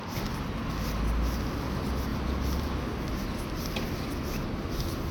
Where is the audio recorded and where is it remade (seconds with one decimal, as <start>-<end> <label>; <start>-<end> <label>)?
0.0-2.1 recorded; 2.1-2.8 remade; 2.8-5.1 recorded